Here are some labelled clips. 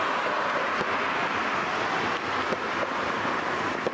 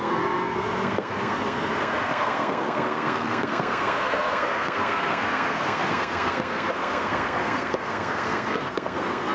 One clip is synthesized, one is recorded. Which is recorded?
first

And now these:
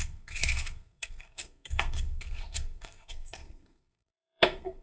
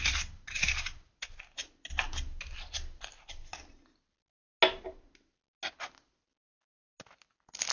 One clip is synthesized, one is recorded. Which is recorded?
second